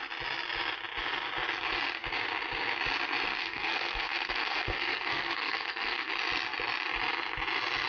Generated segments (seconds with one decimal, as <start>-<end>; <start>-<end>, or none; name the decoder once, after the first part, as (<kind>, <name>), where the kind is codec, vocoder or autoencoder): 3.4-6.1 (codec, SNAC)